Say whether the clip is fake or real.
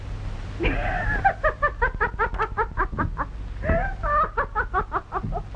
real